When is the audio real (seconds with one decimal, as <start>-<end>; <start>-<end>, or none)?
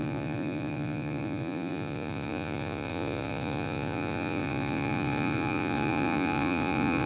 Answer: none